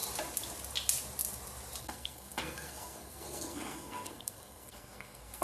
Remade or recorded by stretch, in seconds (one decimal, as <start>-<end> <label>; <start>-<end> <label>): 0.0-1.8 recorded; 1.8-5.4 remade